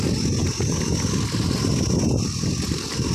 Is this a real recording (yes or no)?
yes